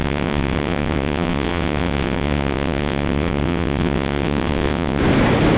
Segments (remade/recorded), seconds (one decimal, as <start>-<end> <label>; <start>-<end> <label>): 0.0-5.0 remade; 5.0-5.6 recorded